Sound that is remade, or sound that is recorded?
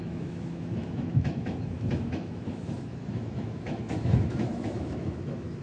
remade